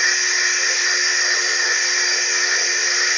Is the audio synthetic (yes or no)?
no